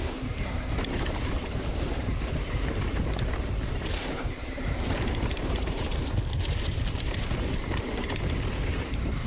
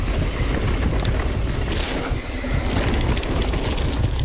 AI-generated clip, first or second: first